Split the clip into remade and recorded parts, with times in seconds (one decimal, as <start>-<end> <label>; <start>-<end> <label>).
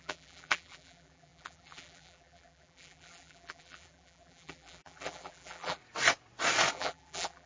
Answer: 0.0-5.8 remade; 5.8-6.7 recorded; 6.7-7.5 remade